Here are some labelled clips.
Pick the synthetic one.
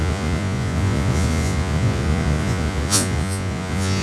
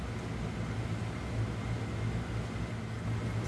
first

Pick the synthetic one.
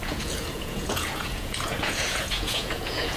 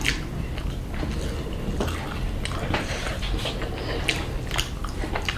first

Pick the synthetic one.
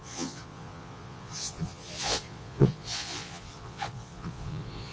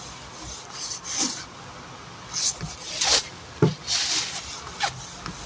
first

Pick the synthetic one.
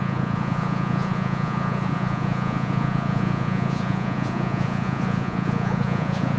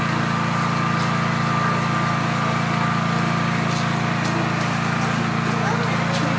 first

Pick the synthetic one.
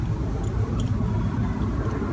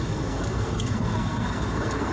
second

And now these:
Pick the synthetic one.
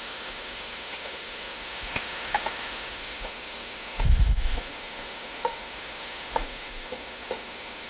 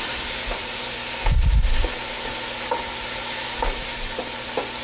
first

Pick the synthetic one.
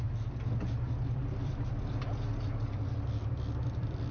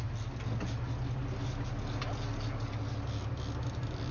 first